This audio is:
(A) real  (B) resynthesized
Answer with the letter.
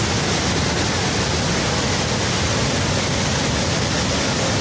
A